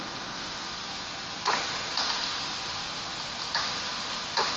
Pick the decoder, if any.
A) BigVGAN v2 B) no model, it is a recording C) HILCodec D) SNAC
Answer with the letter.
B